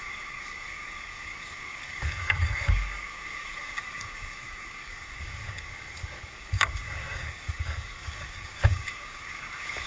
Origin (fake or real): fake